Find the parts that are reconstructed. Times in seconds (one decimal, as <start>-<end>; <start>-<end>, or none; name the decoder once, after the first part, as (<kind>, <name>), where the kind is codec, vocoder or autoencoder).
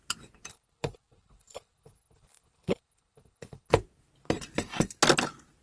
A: 0.5-3.7 (codec, HILCodec)